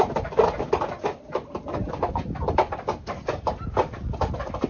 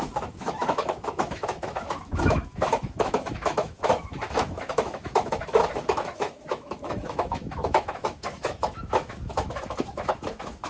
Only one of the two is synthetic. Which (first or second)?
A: second